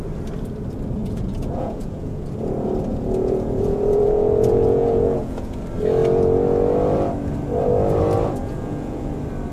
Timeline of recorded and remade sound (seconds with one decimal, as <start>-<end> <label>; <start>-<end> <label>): 0.0-1.0 recorded; 1.0-2.2 remade; 2.2-2.9 recorded; 2.9-5.6 remade; 5.6-8.4 recorded; 8.4-9.1 remade; 9.1-9.5 recorded